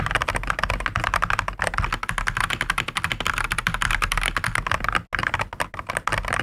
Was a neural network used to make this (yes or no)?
no